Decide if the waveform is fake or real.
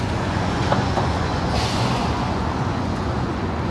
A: fake